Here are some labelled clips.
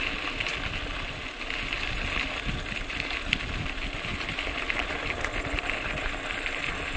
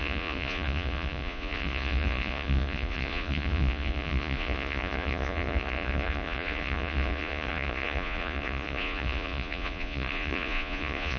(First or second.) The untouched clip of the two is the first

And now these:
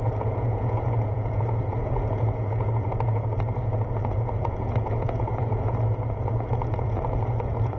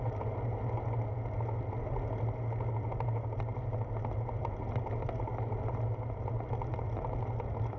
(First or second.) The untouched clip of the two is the second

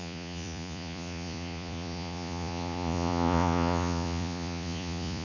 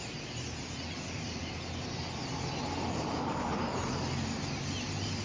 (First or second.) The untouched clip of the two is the second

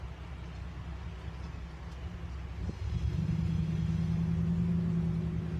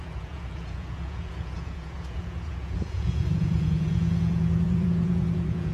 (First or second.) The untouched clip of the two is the first